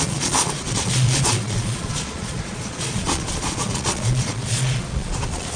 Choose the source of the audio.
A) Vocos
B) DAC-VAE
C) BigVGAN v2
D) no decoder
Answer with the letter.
A